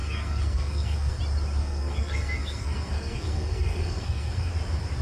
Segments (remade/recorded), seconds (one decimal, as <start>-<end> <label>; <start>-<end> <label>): 0.0-1.2 remade; 1.2-1.6 recorded; 1.6-4.5 remade; 4.5-5.0 recorded